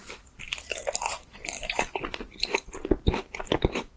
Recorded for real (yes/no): yes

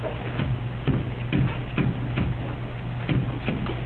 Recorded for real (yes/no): yes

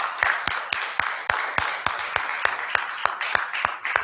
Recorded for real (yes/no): yes